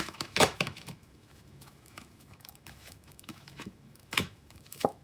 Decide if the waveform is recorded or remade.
remade